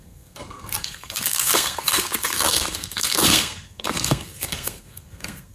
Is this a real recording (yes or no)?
no